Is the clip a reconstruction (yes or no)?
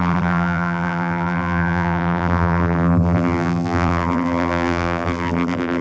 yes